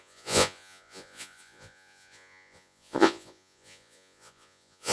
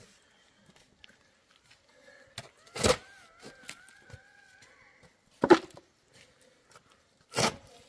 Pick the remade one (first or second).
first